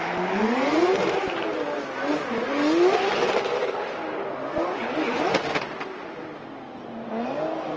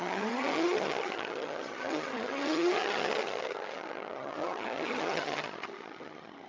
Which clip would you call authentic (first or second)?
first